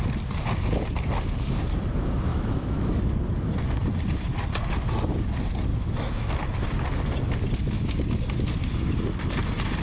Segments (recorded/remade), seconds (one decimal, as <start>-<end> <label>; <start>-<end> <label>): 0.0-2.3 recorded; 2.3-3.0 remade; 3.0-5.7 recorded; 5.7-6.3 remade; 6.3-9.8 recorded